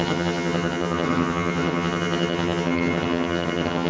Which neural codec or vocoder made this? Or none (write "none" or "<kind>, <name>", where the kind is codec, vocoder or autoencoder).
vocoder, HiFi-GAN